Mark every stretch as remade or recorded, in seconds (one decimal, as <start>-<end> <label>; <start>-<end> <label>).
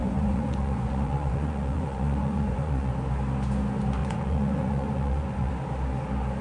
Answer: 0.0-2.9 remade; 2.9-4.0 recorded; 4.0-5.5 remade; 5.5-6.4 recorded